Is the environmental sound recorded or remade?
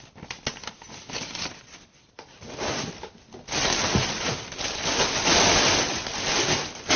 recorded